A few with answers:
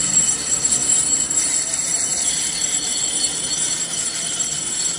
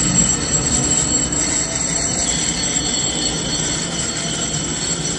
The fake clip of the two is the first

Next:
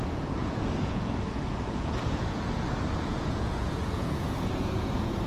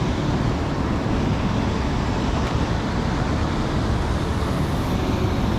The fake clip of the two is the first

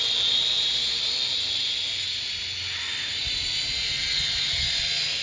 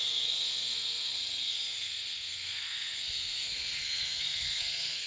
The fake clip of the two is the second